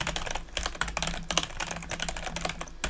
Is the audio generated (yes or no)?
no